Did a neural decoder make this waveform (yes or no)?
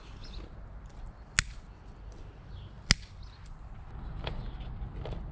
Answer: no